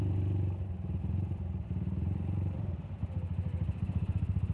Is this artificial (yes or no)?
yes